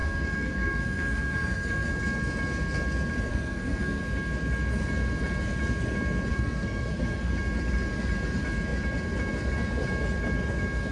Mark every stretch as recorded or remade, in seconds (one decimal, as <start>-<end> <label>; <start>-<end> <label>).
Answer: 0.0-1.9 remade; 1.9-3.3 recorded; 3.3-4.0 remade; 4.0-6.3 recorded; 6.3-7.3 remade; 7.3-10.9 recorded